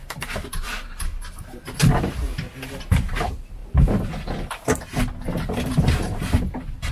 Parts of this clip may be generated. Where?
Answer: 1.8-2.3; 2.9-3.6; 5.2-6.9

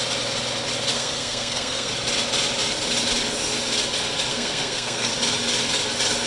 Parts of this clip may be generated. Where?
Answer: 0.9-1.9; 4.3-5.1

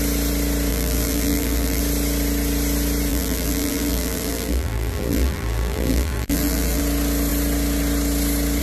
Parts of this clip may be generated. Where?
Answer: 0.7-1.8; 3.1-6.8

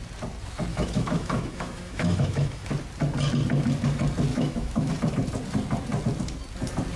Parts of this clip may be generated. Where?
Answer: 0.7-2.7; 4.3-4.9